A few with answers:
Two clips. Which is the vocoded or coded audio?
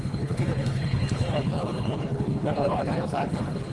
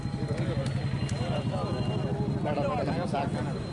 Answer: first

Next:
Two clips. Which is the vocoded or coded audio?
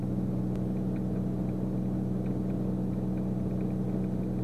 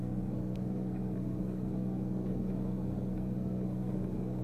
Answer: second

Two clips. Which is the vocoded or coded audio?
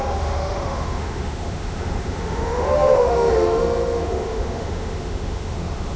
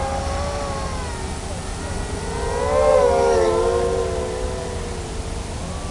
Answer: first